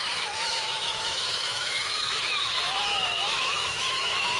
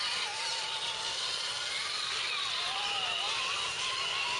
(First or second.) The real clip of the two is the second